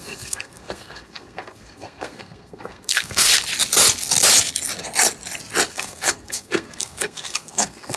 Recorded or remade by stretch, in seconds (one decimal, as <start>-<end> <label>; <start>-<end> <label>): 0.0-3.3 remade; 3.3-5.7 recorded; 5.7-8.0 remade